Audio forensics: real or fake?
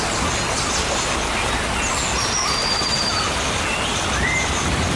real